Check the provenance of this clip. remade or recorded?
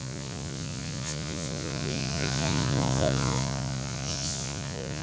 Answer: remade